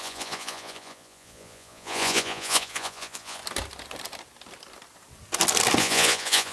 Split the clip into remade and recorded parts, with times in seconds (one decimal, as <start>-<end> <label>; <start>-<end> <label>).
0.0-3.4 remade; 3.4-5.8 recorded; 5.8-6.5 remade